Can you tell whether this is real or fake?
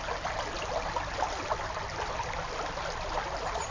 real